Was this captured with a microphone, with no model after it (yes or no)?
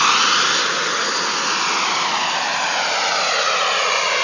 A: yes